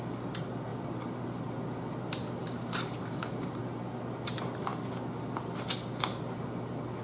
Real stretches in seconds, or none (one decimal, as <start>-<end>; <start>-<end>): 0.0-2.4; 3.6-7.0